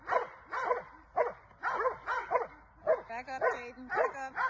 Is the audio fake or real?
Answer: real